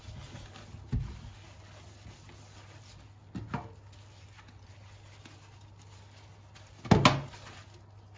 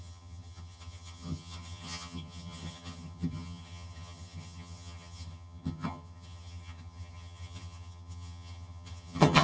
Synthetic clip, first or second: second